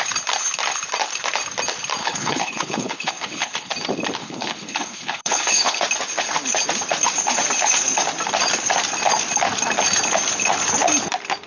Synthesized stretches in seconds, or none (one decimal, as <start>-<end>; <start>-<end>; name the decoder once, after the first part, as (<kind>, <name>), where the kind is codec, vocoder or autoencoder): 2.0-3.7 (codec, HILCodec); 4.2-5.8